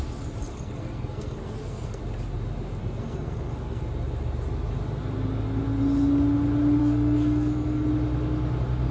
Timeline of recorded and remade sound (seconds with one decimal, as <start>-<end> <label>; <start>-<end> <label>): 0.0-0.5 recorded; 0.5-2.0 remade; 2.0-2.8 recorded; 2.8-3.8 remade; 3.8-6.8 recorded; 6.8-7.9 remade; 7.9-8.9 recorded